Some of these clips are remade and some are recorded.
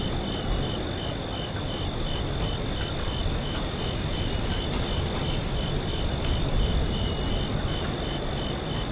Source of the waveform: recorded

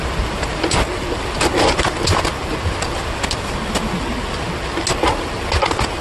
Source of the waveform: recorded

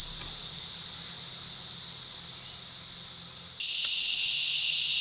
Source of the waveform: recorded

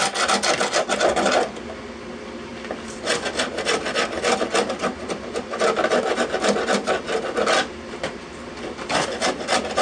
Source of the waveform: recorded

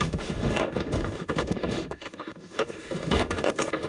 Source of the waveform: remade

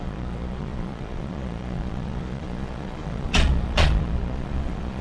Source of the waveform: remade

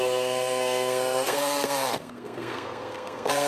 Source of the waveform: remade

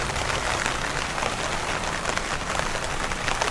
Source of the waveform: recorded